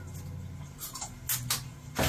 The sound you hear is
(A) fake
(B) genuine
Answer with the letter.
B